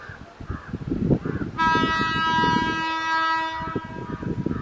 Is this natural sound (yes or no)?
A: yes